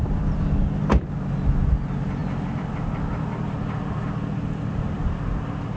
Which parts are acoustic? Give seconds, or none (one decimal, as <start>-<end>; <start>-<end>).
0.0-5.8